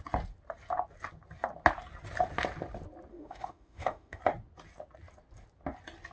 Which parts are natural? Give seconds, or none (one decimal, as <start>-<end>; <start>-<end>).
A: 0.0-3.1; 4.2-6.1